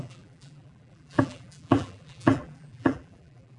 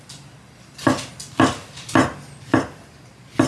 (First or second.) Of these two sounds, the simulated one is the first